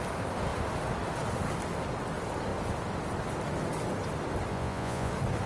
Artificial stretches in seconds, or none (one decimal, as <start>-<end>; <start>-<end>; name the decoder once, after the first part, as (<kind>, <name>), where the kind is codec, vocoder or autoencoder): 4.5-5.1 (vocoder, Vocos)